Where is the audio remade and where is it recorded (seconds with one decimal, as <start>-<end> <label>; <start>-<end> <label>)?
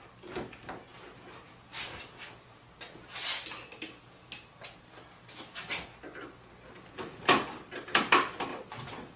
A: 0.0-8.5 recorded; 8.5-9.2 remade